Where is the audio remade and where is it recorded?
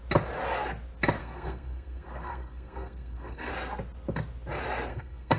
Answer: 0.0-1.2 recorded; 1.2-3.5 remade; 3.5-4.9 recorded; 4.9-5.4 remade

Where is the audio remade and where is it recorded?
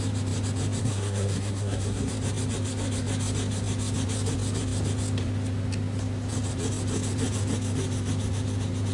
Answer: 0.0-0.8 recorded; 0.8-2.1 remade; 2.1-8.9 recorded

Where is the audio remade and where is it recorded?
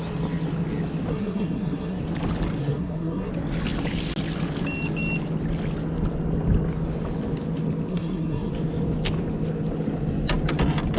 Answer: 0.0-1.1 recorded; 1.1-2.0 remade; 2.0-2.6 recorded; 2.6-3.3 remade; 3.3-7.9 recorded; 7.9-8.5 remade; 8.5-11.0 recorded